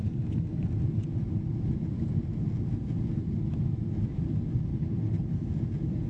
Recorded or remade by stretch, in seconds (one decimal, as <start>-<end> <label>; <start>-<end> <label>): 0.0-4.7 recorded; 4.7-5.3 remade; 5.3-6.1 recorded